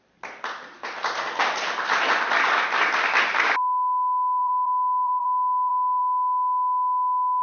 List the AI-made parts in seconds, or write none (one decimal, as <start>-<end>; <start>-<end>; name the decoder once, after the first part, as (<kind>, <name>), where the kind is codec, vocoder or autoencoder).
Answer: 4.4-6.0 (vocoder, BigVGAN v2)